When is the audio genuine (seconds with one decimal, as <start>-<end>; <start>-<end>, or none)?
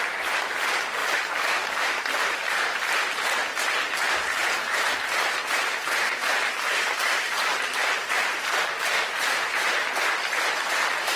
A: 0.0-4.4; 8.1-11.2